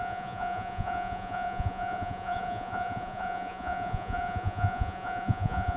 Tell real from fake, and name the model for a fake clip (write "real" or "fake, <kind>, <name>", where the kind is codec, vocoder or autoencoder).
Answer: fake, vocoder, Vocos